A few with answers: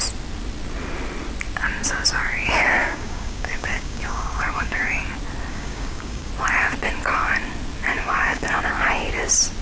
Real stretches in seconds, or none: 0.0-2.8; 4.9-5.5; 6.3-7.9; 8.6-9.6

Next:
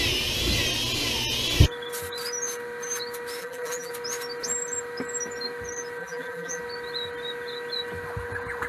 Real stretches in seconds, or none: 0.0-3.4; 3.9-6.0; 6.6-8.7

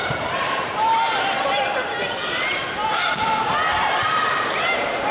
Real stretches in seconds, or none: 1.1-5.1

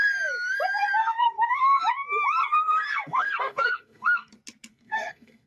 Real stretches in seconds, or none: 0.0-1.0; 1.8-2.4; 4.3-4.7

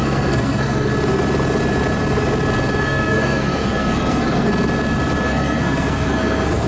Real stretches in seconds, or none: 0.9-2.8; 4.5-5.2